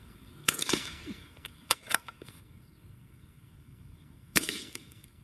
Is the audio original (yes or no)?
no